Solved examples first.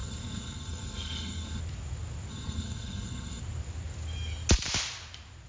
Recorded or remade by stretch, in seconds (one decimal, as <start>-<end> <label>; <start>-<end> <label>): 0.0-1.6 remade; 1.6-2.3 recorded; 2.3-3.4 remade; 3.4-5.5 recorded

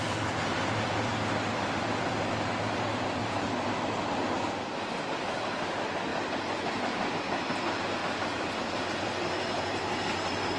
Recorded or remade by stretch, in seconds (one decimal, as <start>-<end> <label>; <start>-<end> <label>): 0.0-0.5 recorded; 0.5-5.3 remade; 5.3-6.1 recorded; 6.1-7.1 remade; 7.1-8.0 recorded; 8.0-8.9 remade; 8.9-10.6 recorded

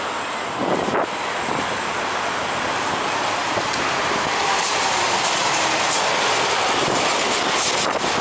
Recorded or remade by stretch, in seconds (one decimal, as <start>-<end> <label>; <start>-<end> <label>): 0.0-3.4 recorded; 3.4-6.0 remade; 6.0-8.2 recorded